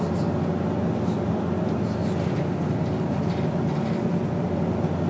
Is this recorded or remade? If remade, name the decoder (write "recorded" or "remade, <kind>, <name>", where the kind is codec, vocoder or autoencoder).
recorded